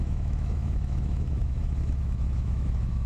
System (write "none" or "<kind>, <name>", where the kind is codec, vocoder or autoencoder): autoencoder, DAC-VAE